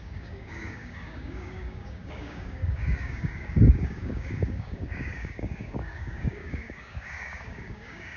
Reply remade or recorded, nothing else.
remade